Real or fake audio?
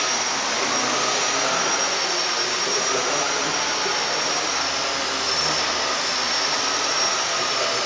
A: real